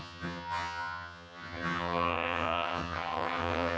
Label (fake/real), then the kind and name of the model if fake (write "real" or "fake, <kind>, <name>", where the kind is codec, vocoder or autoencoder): fake, vocoder, HiFi-GAN